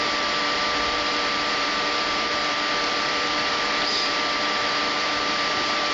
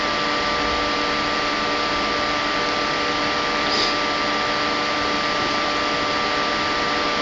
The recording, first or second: second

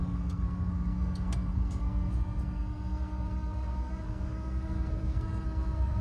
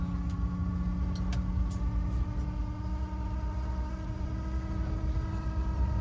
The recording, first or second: second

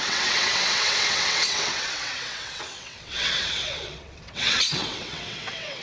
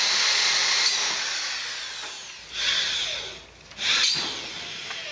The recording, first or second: second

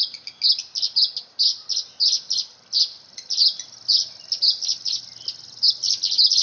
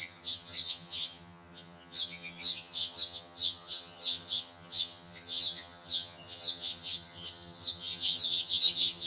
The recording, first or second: first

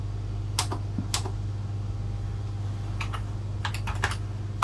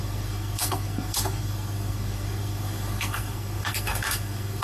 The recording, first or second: first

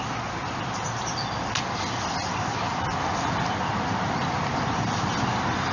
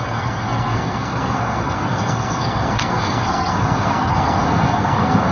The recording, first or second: first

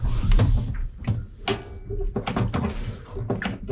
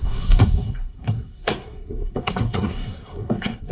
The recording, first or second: first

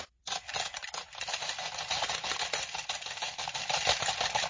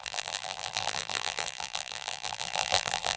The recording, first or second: first